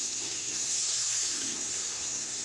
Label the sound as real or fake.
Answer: fake